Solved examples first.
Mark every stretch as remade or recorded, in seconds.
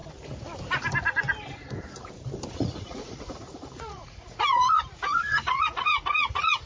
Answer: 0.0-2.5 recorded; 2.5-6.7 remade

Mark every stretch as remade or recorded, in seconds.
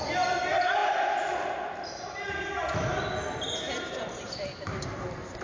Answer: 0.0-5.4 recorded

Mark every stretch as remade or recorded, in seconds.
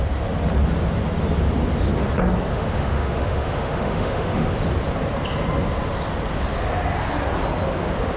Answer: 0.0-2.5 recorded; 2.5-4.5 remade; 4.5-8.2 recorded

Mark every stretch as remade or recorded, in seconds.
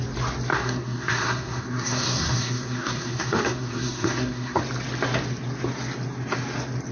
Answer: 0.0-0.5 recorded; 0.5-4.6 remade; 4.6-6.9 recorded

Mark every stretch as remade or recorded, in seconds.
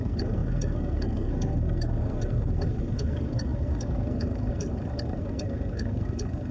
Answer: 0.0-6.5 remade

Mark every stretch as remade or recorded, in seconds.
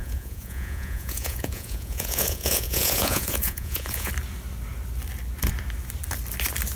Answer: 0.0-4.1 remade; 4.1-6.8 recorded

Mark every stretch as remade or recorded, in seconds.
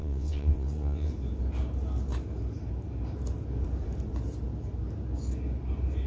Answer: 0.0-1.1 remade; 1.1-6.1 recorded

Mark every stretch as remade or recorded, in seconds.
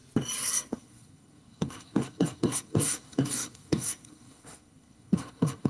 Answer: 0.0-0.7 recorded; 0.7-5.7 remade